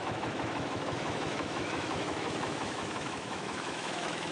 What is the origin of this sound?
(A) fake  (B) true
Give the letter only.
A